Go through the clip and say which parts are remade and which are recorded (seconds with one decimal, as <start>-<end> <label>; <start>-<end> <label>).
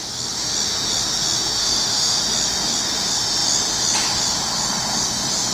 0.0-1.6 recorded; 1.6-2.2 remade; 2.2-5.5 recorded